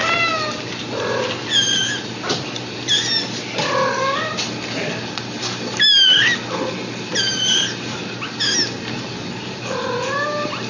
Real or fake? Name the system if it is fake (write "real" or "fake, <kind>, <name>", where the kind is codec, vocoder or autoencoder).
real